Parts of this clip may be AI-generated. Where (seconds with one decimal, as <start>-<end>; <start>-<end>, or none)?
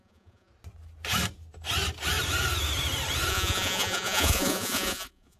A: 0.0-0.5; 3.3-5.4